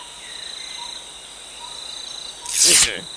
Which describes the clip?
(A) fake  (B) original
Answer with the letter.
B